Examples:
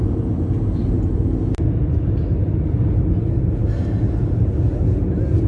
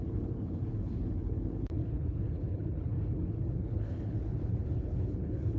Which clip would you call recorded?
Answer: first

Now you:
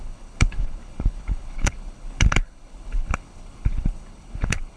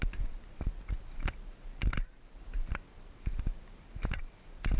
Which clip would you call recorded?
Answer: second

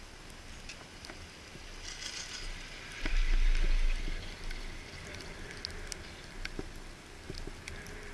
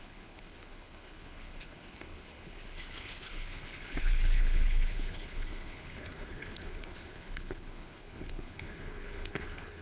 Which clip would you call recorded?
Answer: first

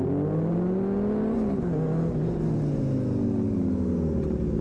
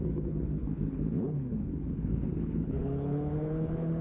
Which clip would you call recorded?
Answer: first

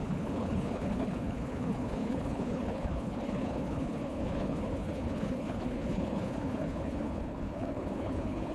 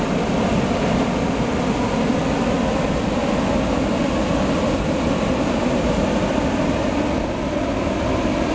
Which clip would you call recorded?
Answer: second